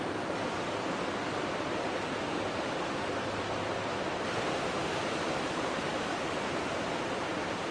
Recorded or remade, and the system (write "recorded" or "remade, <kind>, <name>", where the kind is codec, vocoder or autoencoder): recorded